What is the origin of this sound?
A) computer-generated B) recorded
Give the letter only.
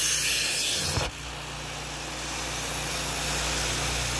B